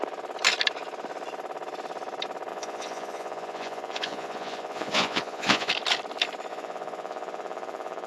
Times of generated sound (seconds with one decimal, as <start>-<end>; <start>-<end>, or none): 2.5-5.7; 6.5-8.1